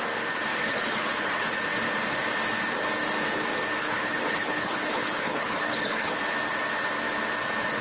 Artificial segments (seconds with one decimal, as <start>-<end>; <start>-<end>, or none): 0.5-1.5; 3.8-6.2